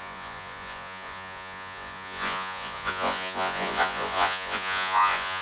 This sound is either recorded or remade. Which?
remade